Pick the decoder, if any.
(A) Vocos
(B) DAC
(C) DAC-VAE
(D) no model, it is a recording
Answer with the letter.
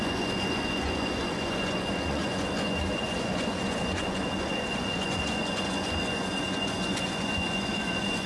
A